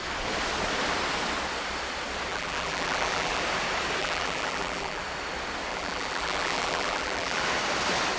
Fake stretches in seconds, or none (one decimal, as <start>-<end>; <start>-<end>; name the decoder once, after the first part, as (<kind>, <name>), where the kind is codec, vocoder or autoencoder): 2.3-3.4 (vocoder, BigVGAN v2); 4.0-5.0; 5.7-7.4